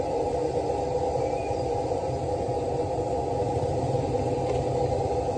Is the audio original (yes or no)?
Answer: yes